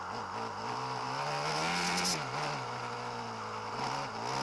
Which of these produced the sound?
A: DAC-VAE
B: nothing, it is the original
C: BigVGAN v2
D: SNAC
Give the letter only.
B